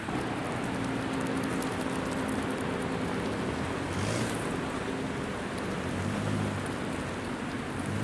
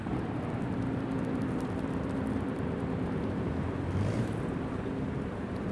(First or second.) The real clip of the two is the first